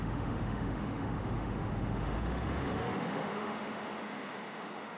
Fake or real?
fake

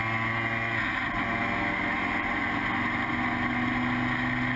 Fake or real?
real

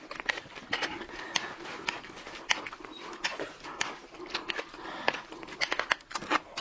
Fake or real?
real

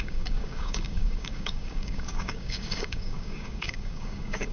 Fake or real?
fake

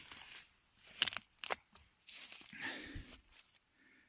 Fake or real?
real